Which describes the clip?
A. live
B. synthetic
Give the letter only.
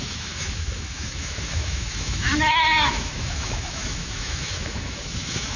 B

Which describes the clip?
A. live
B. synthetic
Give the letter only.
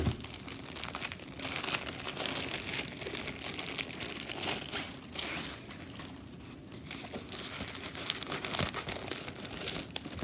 A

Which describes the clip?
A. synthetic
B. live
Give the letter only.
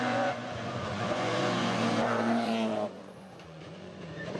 A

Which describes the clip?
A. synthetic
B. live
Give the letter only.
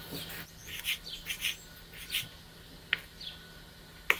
B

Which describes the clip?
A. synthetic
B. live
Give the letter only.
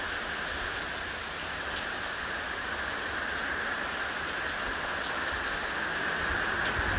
B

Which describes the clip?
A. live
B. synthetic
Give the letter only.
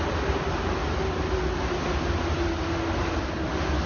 A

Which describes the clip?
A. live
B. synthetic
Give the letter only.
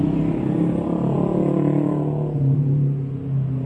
A